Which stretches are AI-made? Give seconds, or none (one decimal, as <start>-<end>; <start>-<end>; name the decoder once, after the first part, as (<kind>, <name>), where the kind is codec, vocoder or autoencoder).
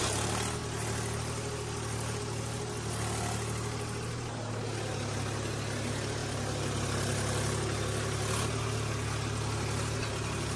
none